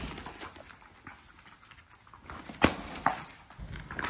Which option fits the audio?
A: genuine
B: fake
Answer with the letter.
A